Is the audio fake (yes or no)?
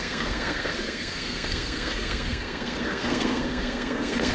yes